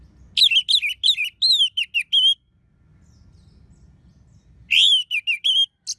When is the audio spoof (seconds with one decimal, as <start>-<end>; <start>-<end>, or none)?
none